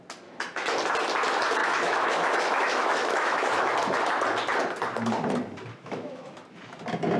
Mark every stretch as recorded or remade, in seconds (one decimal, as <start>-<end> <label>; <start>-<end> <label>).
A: 0.0-1.6 recorded; 1.6-3.7 remade; 3.7-5.7 recorded; 5.7-6.3 remade; 6.3-7.2 recorded